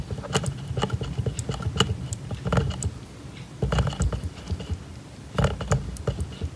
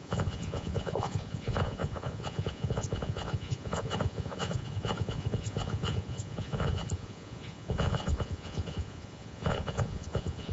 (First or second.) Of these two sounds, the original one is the first